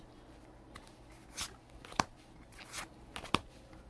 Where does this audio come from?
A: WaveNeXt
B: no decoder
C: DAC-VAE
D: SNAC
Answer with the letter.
B